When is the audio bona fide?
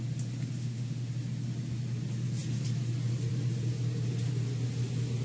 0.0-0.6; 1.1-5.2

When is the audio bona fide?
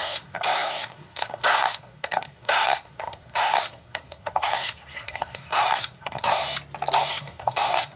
6.4-7.1